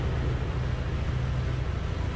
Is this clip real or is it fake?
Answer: real